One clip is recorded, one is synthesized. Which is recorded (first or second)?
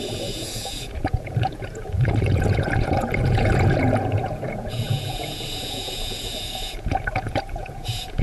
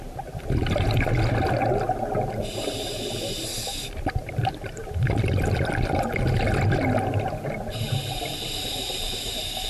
second